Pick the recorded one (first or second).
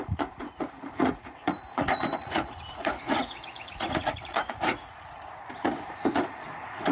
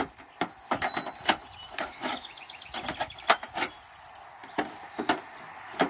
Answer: second